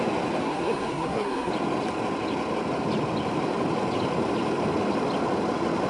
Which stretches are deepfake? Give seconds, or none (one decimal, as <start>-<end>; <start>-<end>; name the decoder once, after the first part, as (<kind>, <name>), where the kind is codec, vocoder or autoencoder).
0.4-1.5 (codec, SNAC)